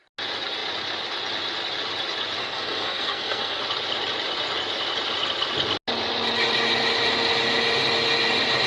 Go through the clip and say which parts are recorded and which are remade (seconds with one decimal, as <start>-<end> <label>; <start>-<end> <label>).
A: 0.0-2.4 recorded; 2.4-3.6 remade; 3.6-8.7 recorded